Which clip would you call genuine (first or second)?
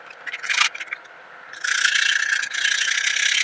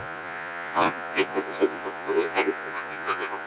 first